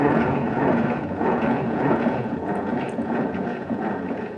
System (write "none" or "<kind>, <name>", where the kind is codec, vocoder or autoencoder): vocoder, Vocos